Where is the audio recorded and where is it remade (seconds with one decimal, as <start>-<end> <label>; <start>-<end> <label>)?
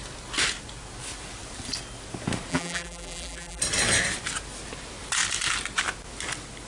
0.0-2.5 recorded; 2.5-3.6 remade; 3.6-6.7 recorded